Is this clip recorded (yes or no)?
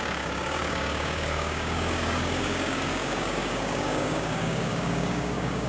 no